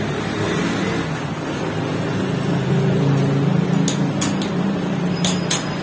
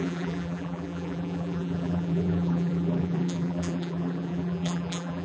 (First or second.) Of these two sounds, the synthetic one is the second